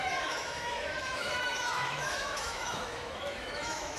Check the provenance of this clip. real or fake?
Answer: fake